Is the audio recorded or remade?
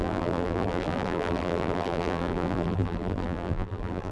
remade